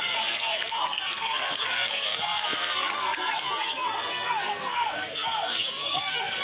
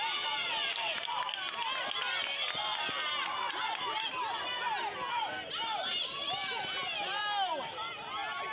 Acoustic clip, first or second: second